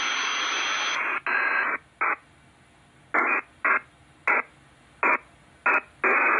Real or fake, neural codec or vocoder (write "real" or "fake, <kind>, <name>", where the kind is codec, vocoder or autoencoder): real